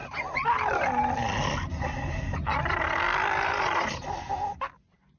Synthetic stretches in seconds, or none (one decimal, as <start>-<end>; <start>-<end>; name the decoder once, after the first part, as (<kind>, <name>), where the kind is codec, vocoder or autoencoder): none